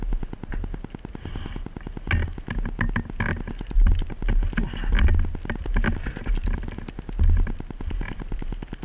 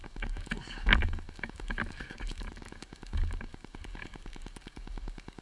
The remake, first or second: second